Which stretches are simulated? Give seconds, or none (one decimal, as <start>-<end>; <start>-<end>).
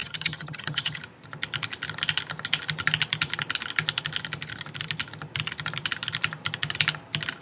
0.0-1.0